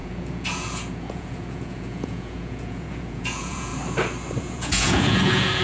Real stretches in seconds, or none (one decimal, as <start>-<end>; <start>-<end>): 3.7-4.4